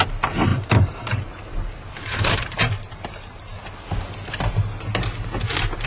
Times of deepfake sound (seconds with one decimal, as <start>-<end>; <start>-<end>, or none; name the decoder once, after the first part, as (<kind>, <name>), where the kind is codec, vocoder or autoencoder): 0.5-4.0 (vocoder, BigVGAN v2)